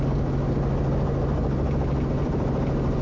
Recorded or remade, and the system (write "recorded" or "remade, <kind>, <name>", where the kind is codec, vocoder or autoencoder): recorded